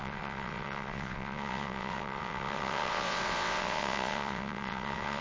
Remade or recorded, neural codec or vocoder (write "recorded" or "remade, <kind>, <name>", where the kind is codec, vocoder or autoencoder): remade, vocoder, WaveNeXt